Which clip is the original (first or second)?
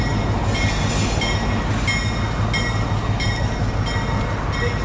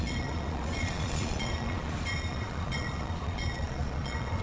first